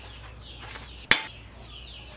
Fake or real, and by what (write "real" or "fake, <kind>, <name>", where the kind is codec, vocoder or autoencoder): real